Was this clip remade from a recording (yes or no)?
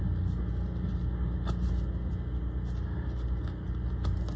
no